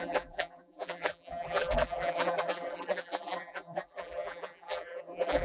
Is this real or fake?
fake